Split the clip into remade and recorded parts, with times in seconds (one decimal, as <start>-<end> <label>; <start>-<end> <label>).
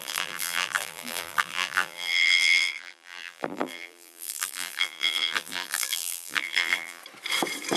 0.0-7.0 remade; 7.0-7.8 recorded